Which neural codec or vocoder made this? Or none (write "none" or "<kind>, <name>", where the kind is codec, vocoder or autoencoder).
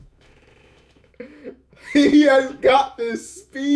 autoencoder, DAC-VAE